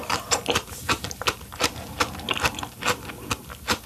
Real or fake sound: real